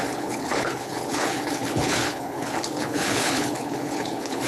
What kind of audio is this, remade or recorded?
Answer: remade